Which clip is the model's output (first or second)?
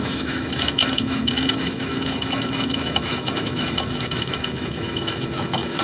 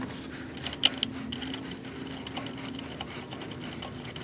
first